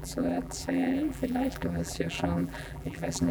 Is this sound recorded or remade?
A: remade